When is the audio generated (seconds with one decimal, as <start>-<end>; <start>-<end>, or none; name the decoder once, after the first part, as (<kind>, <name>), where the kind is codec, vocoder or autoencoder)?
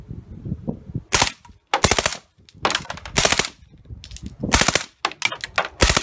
none